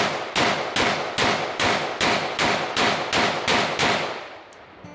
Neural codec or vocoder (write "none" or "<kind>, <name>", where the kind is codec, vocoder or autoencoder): none